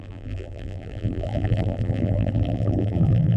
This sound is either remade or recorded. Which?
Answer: remade